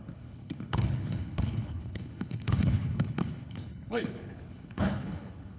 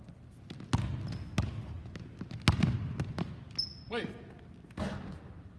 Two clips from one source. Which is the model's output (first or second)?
first